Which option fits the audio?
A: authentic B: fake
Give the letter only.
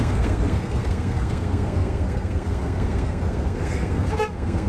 B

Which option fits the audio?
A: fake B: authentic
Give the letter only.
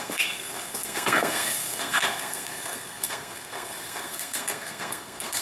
A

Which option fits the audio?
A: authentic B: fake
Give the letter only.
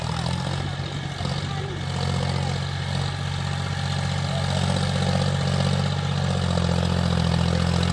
A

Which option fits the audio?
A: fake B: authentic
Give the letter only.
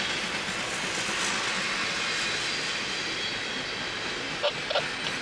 B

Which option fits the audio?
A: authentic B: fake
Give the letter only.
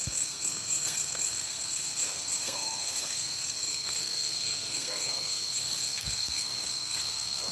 B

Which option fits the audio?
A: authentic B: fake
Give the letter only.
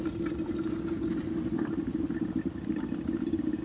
A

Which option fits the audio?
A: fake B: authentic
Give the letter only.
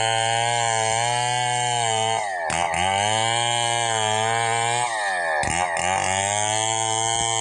B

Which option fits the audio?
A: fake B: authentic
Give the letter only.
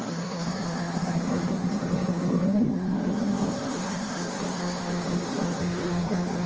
A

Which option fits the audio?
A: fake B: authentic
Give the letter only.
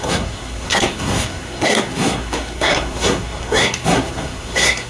A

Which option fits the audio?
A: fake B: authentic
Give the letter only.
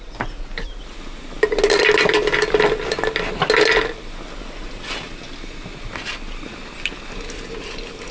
B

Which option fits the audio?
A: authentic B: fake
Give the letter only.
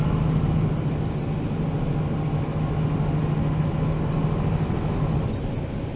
A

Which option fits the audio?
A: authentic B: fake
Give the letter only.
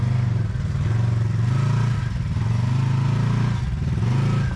A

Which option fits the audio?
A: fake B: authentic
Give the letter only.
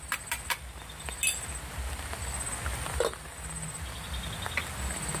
B